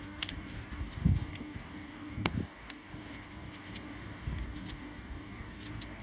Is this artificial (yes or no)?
yes